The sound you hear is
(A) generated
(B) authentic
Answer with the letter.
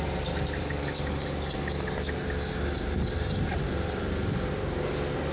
B